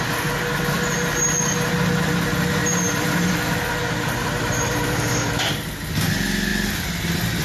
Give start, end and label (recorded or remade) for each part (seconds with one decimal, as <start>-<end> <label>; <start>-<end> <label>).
0.0-2.6 recorded; 2.6-3.3 remade; 3.3-3.8 recorded; 3.8-5.5 remade; 5.5-7.4 recorded